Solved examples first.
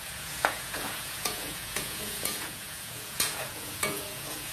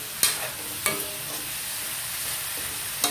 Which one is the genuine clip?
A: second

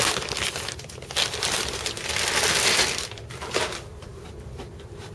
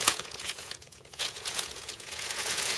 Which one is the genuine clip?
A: first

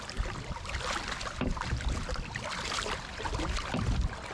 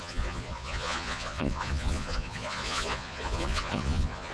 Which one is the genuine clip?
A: first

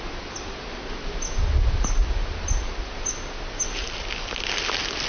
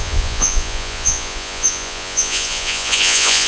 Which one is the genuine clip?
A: first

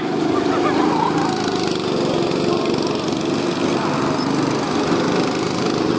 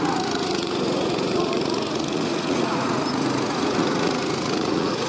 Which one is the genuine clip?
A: first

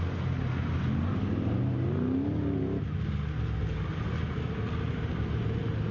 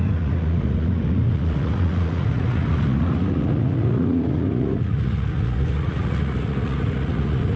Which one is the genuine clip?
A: first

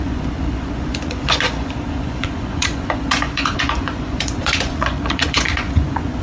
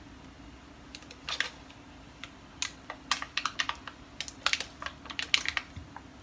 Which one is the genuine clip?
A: second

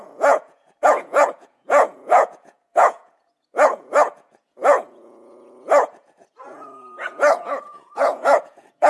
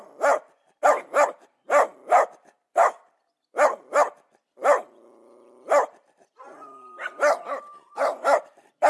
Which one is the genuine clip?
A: second